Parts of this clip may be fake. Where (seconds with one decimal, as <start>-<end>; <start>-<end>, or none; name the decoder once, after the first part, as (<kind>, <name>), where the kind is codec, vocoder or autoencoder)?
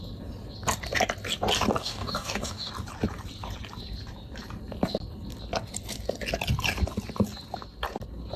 1.8-2.7 (codec, DAC)